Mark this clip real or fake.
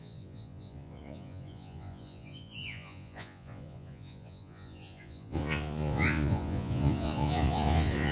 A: fake